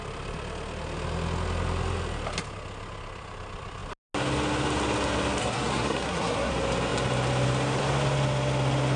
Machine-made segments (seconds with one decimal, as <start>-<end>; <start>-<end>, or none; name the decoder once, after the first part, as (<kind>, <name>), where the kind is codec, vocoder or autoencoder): 5.4-6.5 (codec, SNAC)